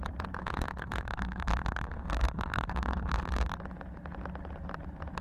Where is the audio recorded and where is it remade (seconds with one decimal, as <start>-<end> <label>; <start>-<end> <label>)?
0.0-0.4 recorded; 0.4-3.5 remade; 3.5-5.2 recorded